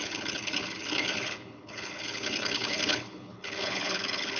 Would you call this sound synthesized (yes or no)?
yes